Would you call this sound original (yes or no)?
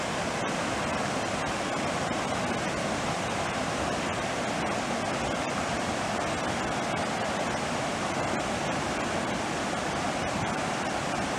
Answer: yes